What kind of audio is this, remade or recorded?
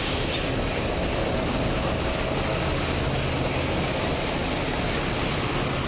recorded